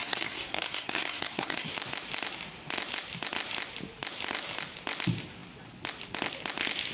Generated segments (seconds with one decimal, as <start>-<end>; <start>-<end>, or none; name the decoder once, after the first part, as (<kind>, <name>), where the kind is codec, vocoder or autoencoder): 0.0-1.7 (codec, SNAC)

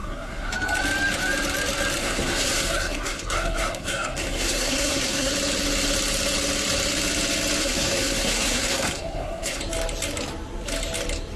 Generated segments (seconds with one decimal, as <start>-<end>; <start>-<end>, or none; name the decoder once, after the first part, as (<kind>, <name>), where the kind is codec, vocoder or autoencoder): 0.0-0.5 (codec, SNAC); 2.0-5.3; 7.6-9.6

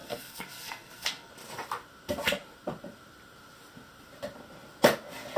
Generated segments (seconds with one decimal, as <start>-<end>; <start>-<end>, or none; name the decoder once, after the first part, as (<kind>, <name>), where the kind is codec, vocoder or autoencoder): 0.0-1.3 (codec, SNAC)

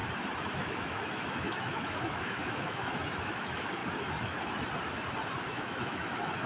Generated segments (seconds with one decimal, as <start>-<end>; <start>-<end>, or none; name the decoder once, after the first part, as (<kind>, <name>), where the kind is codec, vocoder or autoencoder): 0.5-3.8 (autoencoder, DAC-VAE); 5.4-6.5

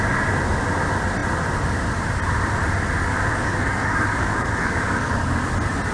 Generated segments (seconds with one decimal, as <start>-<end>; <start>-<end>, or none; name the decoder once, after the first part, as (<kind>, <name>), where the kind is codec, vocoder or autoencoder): 3.0-5.5 (codec, DAC)

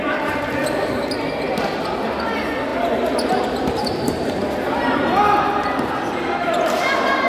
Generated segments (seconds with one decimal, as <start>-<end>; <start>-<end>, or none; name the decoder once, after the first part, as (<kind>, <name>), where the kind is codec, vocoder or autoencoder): 3.8-4.4 (vocoder, BigVGAN v2)